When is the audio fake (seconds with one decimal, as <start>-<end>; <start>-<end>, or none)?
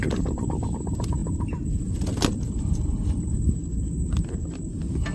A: none